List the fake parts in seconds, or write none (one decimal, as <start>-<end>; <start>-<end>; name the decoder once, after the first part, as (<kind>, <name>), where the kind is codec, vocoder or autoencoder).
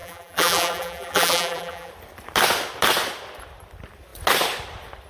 0.0-1.9 (vocoder, BigVGAN v2)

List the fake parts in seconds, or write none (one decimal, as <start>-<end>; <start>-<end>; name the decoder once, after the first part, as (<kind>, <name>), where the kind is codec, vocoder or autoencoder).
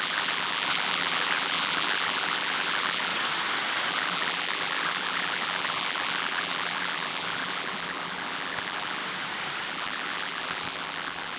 0.0-3.1 (vocoder, BigVGAN v2); 3.9-9.0; 9.7-11.4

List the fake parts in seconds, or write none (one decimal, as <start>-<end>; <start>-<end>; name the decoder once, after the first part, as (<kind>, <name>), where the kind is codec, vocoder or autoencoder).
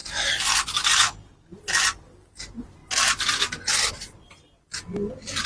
none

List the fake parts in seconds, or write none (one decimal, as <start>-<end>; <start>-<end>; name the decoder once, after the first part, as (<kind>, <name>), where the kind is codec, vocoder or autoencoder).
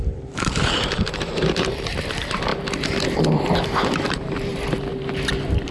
0.0-2.5 (vocoder, BigVGAN v2); 3.5-5.7